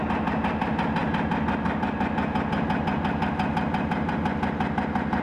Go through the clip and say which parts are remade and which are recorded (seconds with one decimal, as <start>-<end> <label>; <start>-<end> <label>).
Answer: 0.0-5.2 recorded